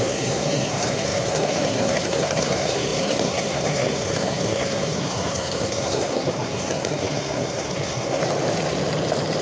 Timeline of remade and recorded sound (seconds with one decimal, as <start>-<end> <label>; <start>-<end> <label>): 0.0-8.2 remade; 8.2-9.4 recorded